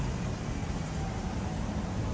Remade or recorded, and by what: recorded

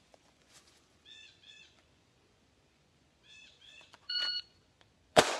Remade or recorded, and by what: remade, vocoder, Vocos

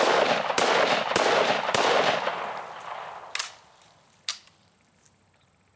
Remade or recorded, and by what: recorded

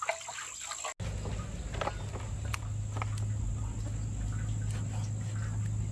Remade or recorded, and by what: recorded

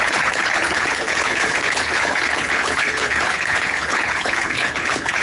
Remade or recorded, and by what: remade, codec, HILCodec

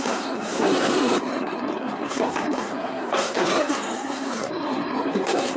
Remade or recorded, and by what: remade, codec, SNAC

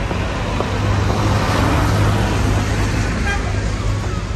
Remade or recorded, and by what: recorded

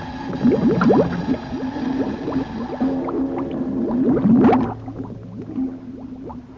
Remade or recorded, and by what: recorded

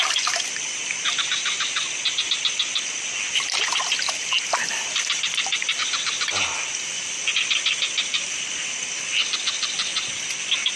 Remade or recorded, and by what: remade, vocoder, BigVGAN v2